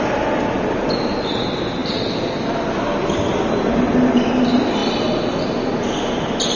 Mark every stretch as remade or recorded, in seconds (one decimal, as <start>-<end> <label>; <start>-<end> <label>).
0.0-6.6 recorded